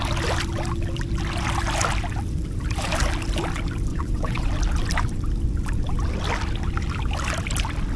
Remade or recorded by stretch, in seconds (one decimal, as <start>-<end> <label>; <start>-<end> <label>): 0.0-3.9 recorded; 3.9-4.5 remade; 4.5-8.0 recorded